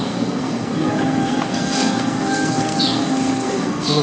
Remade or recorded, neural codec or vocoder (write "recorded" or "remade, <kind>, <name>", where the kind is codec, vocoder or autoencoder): remade, codec, SNAC